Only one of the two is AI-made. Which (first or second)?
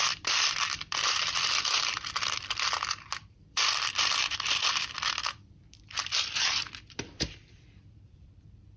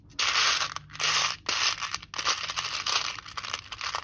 first